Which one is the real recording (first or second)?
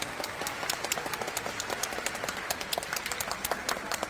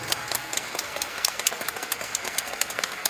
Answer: first